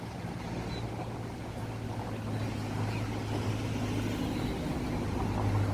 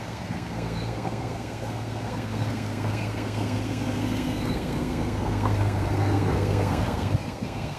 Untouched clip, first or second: first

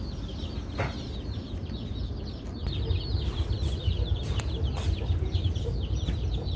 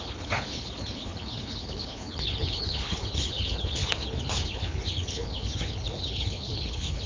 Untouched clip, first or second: first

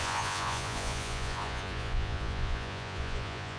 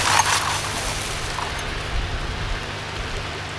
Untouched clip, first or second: second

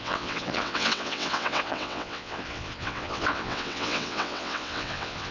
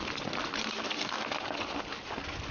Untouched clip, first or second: second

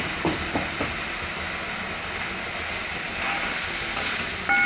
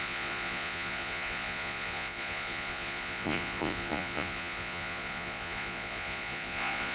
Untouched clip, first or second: first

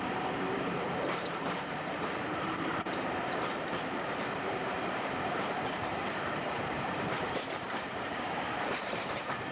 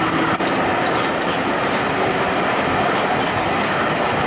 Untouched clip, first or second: second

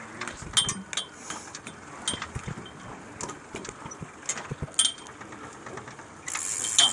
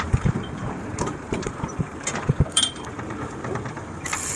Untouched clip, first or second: first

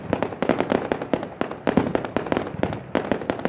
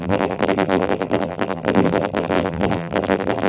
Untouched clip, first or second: first